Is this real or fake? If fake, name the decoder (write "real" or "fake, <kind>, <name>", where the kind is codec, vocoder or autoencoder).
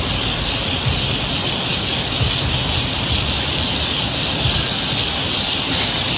real